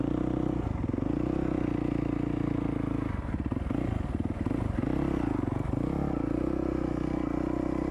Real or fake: real